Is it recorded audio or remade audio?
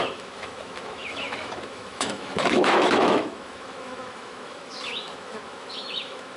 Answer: remade